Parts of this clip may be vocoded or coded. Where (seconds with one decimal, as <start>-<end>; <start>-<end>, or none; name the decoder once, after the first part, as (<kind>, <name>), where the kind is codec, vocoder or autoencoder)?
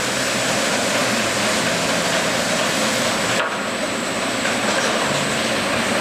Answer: none